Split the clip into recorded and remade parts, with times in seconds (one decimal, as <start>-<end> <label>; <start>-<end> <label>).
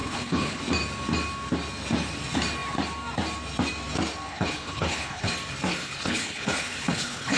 0.0-0.6 remade; 0.6-4.3 recorded; 4.3-5.3 remade; 5.3-5.7 recorded; 5.7-7.4 remade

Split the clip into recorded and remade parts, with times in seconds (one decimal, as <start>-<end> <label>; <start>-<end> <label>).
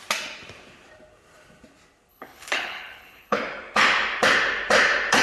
0.0-2.1 recorded; 2.1-3.4 remade; 3.4-5.2 recorded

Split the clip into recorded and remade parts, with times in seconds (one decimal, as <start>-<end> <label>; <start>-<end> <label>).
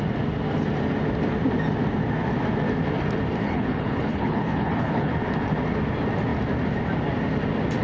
0.0-3.4 recorded; 3.4-5.1 remade; 5.1-7.8 recorded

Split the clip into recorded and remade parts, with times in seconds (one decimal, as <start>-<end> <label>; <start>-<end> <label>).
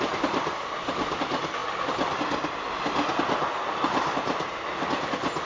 0.0-5.5 recorded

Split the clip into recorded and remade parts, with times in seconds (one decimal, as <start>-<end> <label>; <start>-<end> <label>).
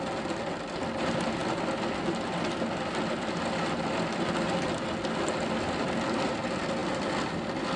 0.0-7.8 recorded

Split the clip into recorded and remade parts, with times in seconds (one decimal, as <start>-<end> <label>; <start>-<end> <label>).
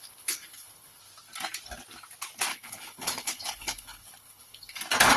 0.0-1.0 remade; 1.0-2.5 recorded; 2.5-4.8 remade; 4.8-5.2 recorded